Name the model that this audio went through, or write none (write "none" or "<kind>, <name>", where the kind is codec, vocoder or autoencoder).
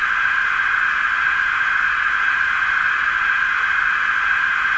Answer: none